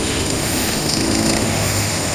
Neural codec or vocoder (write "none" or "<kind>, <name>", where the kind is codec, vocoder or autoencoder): autoencoder, DAC-VAE